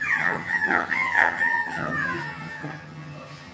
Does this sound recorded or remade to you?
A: remade